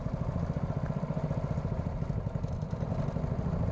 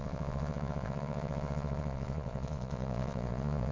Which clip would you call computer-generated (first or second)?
second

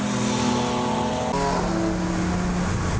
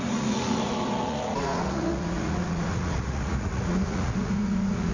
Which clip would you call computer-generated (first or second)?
second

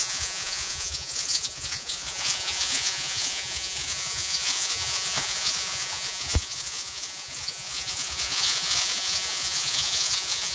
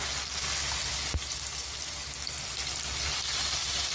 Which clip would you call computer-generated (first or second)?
first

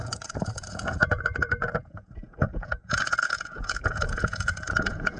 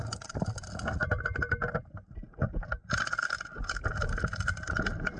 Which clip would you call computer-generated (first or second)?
first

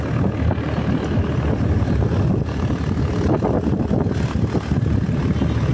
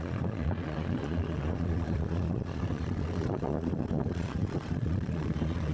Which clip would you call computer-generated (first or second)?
second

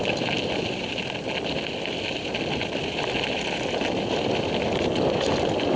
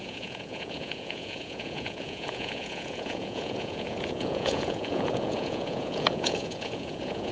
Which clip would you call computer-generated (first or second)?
second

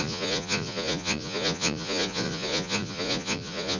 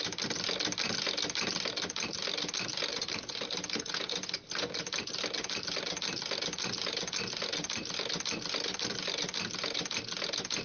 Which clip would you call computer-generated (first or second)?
first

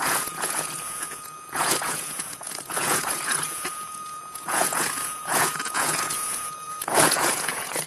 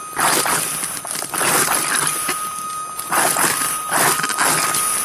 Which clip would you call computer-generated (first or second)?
first